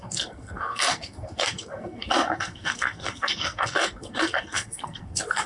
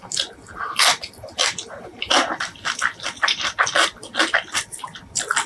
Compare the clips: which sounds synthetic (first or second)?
first